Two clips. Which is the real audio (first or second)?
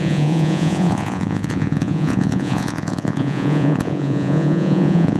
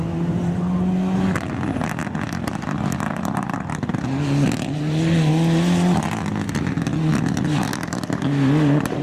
second